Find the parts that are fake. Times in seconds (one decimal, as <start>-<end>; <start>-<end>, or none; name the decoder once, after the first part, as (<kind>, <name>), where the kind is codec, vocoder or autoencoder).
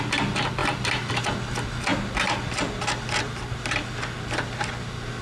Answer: 0.6-1.1 (vocoder, BigVGAN v2); 1.9-2.8